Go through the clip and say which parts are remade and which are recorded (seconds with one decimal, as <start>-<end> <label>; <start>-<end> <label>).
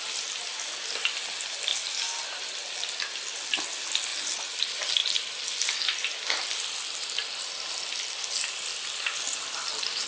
0.0-8.7 recorded; 8.7-10.1 remade